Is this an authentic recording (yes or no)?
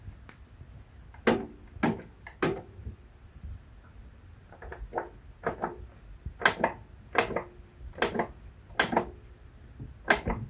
yes